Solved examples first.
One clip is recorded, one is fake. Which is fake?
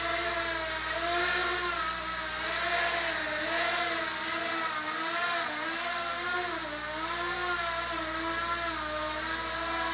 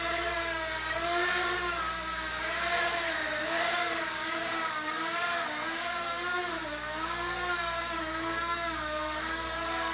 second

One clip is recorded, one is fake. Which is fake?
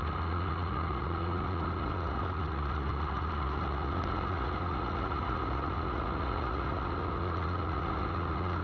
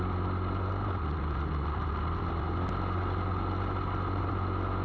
first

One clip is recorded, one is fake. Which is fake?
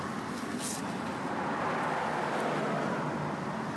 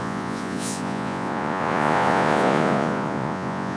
second